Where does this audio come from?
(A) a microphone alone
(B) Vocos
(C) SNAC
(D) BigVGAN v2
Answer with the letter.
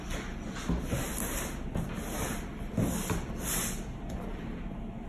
A